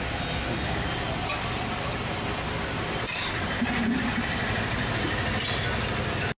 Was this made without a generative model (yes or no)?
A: yes